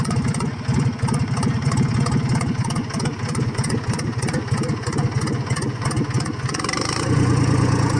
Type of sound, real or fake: fake